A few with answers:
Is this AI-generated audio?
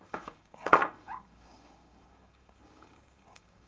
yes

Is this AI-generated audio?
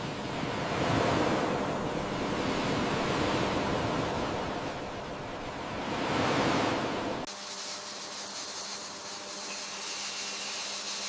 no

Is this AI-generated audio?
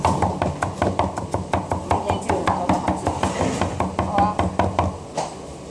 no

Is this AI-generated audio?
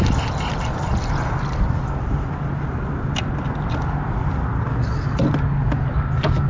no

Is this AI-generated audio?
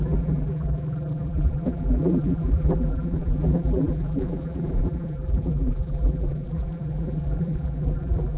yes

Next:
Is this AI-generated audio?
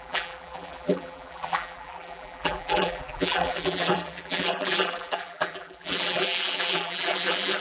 yes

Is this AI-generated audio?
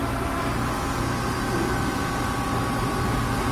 no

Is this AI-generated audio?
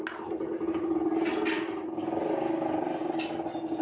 no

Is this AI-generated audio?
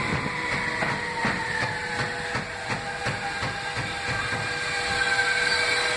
no